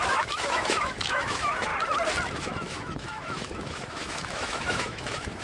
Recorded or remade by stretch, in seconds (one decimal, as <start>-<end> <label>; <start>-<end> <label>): 0.0-1.7 remade; 1.7-2.4 recorded; 2.4-5.4 remade